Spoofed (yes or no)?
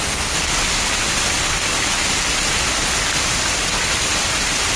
no